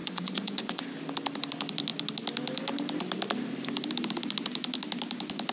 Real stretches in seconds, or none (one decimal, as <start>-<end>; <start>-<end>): 0.8-5.5